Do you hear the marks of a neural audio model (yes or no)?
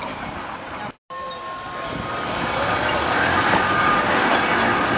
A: no